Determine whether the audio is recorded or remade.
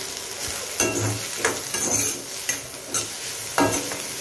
recorded